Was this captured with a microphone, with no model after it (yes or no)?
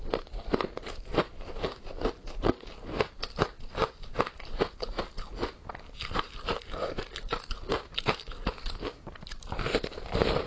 yes